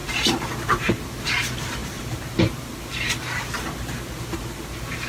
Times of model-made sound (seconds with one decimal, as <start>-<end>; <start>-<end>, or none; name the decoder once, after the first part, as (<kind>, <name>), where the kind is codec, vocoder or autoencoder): 0.0-5.1 (vocoder, BigVGAN v2)